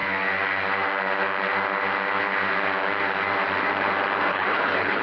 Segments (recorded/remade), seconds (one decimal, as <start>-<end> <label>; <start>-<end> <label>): 0.0-4.3 recorded; 4.3-5.0 remade